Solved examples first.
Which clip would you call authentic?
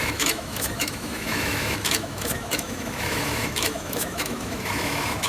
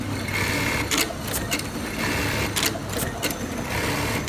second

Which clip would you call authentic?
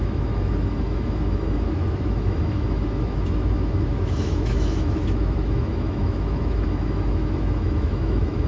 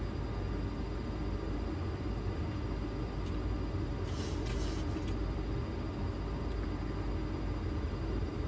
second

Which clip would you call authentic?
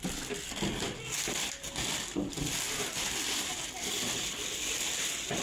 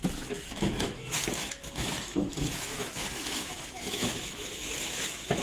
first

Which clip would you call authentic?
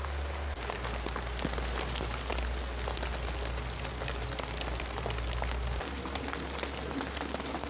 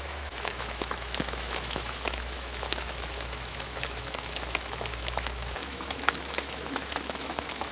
first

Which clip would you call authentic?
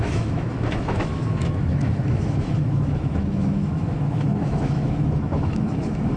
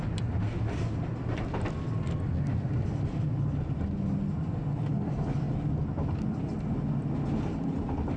second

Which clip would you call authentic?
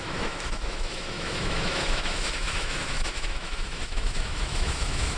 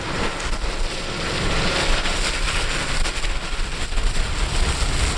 second